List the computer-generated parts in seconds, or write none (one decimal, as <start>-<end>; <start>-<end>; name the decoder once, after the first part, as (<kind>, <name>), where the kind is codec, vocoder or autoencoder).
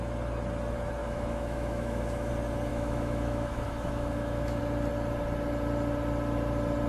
1.0-2.3 (autoencoder, DAC-VAE); 2.7-4.6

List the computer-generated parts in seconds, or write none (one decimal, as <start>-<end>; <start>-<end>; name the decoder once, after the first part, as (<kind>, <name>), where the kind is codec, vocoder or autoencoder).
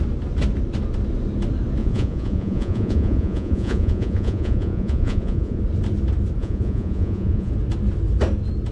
1.8-5.6 (vocoder, Vocos); 6.4-7.5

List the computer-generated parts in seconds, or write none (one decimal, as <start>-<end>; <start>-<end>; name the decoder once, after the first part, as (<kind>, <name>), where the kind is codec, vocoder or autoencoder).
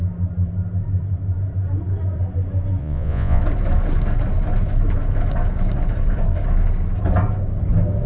2.8-3.4 (vocoder, Vocos)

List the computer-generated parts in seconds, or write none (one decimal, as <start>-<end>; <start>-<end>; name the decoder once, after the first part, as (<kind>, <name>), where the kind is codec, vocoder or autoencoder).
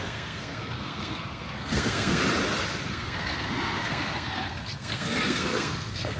0.0-2.2 (codec, SNAC); 2.9-6.2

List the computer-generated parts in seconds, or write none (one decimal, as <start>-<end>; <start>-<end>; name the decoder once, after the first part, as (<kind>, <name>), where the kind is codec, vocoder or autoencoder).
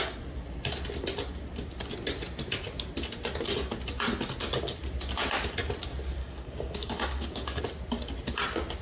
6.2-7.6 (codec, DAC)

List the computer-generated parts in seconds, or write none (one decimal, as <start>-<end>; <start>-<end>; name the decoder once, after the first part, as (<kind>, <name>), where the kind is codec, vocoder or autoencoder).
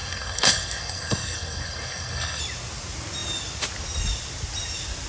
0.0-2.4 (codec, SNAC)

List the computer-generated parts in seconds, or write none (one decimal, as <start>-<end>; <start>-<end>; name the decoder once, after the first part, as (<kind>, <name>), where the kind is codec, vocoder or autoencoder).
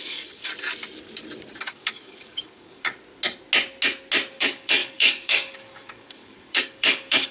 0.0-0.5 (codec, DAC); 1.6-2.9; 4.3-7.3